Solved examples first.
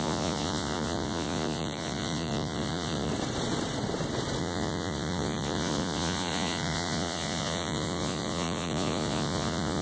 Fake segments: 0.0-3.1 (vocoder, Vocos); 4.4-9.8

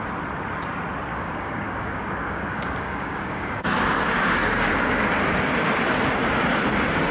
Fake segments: 1.1-4.7 (codec, DAC)

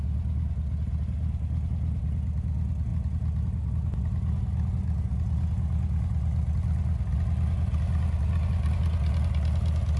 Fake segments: none

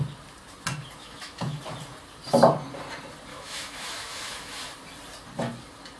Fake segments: 1.0-1.6 (autoencoder, DAC-VAE); 3.3-4.6

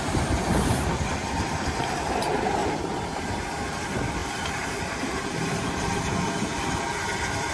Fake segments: 0.0-2.6 (vocoder, BigVGAN v2); 3.2-7.5

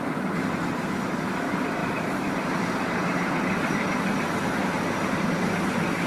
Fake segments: 1.8-5.5 (vocoder, BigVGAN v2)

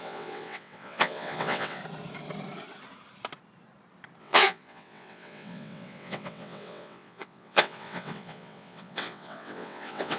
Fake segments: 0.0-1.8 (vocoder, WaveNeXt); 4.2-10.2

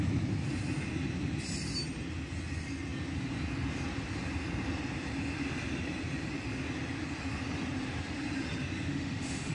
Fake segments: 8.9-9.5 (autoencoder, DAC-VAE)